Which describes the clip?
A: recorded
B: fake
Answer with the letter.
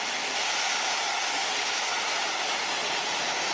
A